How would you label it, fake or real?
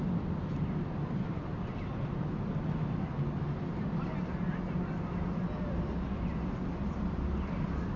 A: real